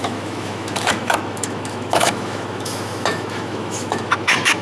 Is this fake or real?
fake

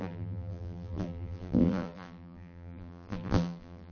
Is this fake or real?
fake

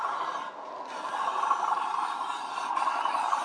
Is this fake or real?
real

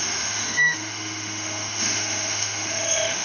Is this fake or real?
fake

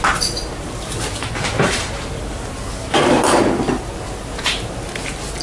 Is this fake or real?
real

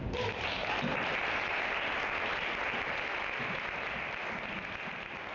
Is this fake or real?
real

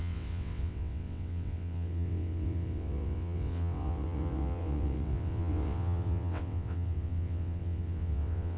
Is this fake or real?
fake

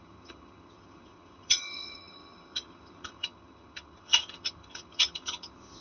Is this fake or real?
fake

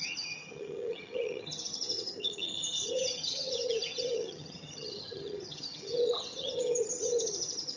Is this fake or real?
fake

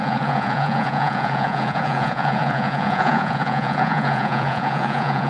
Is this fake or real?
fake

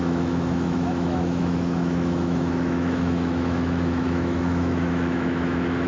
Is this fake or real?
fake